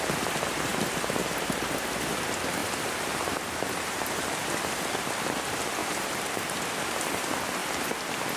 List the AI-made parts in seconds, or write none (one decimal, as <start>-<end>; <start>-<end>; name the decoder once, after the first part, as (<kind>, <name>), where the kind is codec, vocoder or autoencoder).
2.6-5.1 (vocoder, BigVGAN v2); 5.8-6.6; 7.6-8.4